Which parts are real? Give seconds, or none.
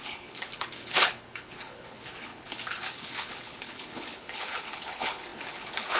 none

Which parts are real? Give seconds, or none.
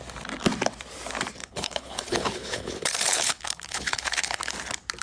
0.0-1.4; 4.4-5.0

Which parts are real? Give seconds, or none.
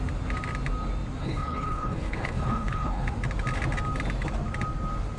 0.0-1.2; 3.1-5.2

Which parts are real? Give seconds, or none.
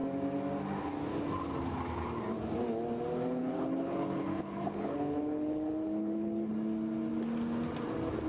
0.0-3.4; 6.5-8.3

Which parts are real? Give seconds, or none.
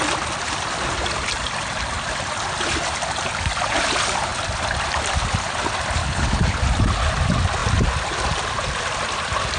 0.0-6.0; 6.6-9.6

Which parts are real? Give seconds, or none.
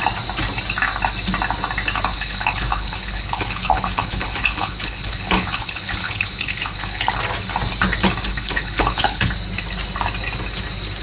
0.0-2.1; 7.1-8.3; 9.3-11.0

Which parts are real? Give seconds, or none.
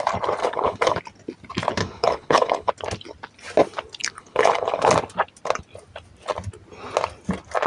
0.0-0.4; 1.0-1.8; 2.7-4.0; 4.9-7.7